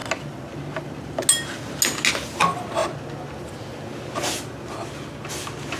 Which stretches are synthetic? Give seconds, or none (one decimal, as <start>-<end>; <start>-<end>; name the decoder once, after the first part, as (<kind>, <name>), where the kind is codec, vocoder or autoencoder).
none